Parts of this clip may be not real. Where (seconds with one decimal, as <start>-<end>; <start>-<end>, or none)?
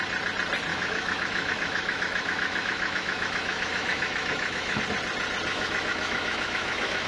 0.7-4.8; 5.5-7.1